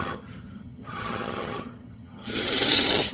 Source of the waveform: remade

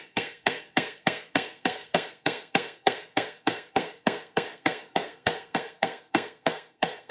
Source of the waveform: remade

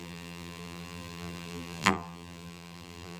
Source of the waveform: remade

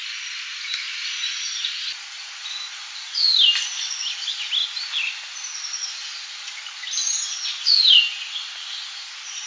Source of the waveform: recorded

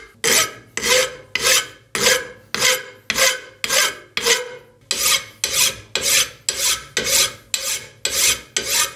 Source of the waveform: recorded